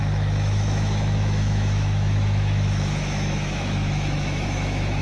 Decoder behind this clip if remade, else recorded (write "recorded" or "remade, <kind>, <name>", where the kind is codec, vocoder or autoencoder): remade, autoencoder, DAC-VAE